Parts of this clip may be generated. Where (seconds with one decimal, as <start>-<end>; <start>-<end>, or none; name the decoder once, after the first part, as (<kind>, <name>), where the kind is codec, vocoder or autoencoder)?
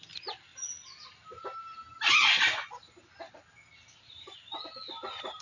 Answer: none